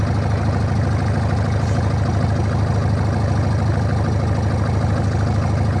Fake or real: real